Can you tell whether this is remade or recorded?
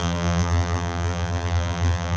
remade